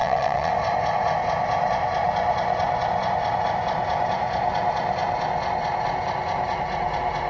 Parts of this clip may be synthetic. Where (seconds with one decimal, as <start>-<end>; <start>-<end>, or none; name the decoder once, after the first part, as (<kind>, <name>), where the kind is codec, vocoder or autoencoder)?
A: 0.0-0.5 (vocoder, WaveNeXt)